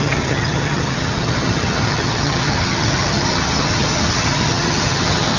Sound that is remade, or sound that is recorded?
remade